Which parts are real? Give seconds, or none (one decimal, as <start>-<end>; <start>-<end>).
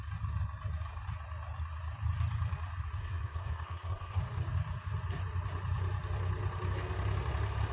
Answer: 0.0-3.0; 4.2-7.7